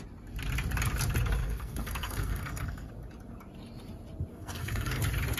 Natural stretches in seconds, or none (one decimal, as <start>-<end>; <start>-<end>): 0.0-1.4; 2.9-4.3; 5.0-5.4